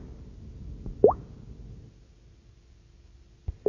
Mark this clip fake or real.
real